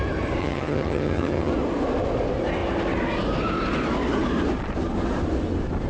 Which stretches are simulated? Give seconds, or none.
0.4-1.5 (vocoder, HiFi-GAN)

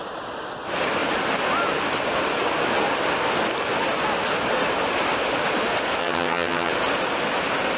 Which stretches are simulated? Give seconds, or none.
6.0-6.7 (vocoder, HiFi-GAN)

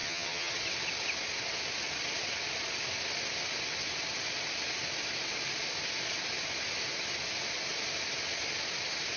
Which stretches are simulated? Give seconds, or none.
0.0-0.5 (vocoder, HiFi-GAN)

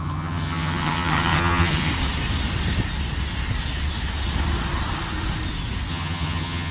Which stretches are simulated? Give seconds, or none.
0.0-1.9 (vocoder, HiFi-GAN); 5.9-6.7